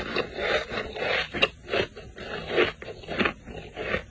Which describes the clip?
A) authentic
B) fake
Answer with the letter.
A